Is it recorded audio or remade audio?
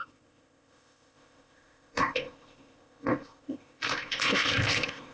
remade